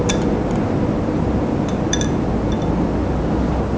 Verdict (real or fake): real